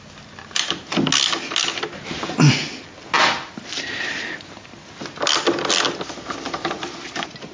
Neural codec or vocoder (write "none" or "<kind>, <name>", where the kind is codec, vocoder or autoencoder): none